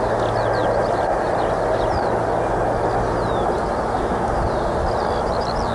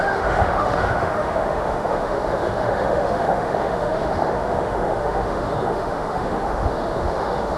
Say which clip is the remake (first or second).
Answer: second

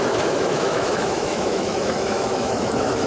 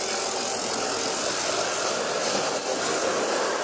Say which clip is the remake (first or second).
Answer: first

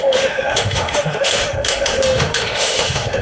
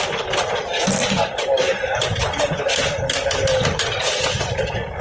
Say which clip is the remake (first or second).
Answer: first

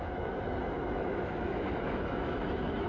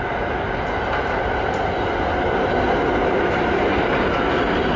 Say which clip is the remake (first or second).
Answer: first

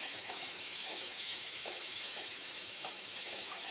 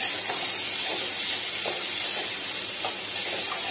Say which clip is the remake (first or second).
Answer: first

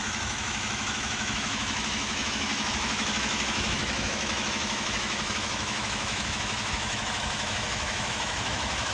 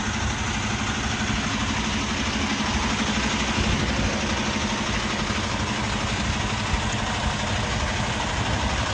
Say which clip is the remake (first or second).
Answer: first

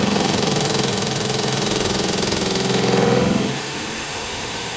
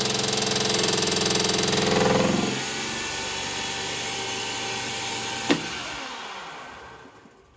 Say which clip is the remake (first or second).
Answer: first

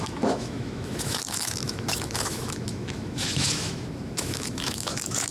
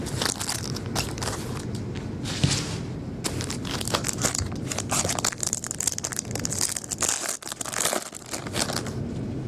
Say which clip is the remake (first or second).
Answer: first